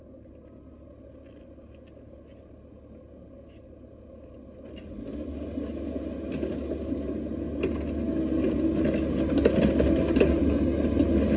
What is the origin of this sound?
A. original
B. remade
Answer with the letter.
A